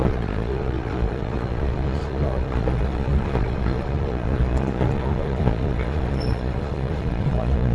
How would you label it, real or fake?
fake